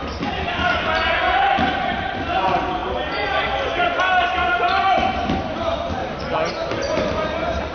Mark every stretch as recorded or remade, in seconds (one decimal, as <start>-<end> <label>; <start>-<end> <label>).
0.0-7.7 recorded